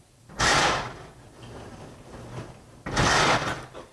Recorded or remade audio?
remade